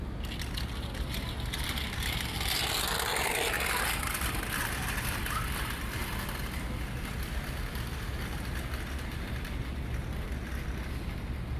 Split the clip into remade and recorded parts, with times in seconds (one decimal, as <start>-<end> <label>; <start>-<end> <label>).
0.0-11.6 recorded